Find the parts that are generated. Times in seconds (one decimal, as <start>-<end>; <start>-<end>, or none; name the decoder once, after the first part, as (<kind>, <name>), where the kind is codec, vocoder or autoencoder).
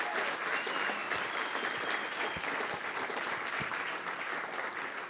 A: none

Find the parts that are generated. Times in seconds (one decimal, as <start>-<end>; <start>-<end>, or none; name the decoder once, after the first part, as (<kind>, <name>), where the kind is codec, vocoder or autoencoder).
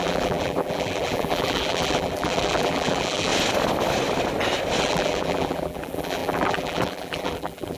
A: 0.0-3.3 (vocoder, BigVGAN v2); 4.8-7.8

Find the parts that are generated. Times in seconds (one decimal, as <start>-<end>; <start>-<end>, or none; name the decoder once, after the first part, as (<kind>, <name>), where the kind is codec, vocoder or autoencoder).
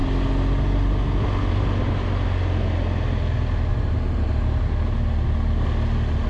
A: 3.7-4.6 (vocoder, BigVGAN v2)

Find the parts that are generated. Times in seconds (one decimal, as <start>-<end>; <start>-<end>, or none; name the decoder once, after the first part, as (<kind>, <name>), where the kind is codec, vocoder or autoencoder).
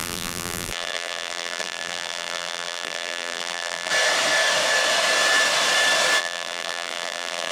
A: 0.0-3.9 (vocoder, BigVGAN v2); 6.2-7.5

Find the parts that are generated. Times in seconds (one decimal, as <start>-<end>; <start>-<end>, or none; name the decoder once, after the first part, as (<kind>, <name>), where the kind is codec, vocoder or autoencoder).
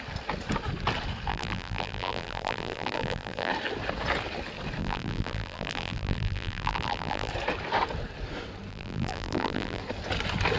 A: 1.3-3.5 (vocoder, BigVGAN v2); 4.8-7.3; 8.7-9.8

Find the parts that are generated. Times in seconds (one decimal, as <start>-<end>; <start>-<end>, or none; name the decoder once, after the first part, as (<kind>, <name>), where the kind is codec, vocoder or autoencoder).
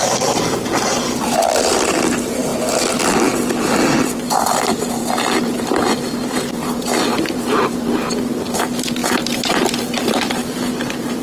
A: 0.0-2.5 (vocoder, BigVGAN v2); 3.5-9.0; 9.5-11.2